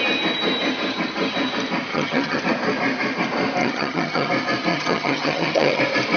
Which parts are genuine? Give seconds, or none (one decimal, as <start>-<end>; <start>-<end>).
0.0-1.9; 2.4-3.6; 4.3-4.7; 5.8-6.2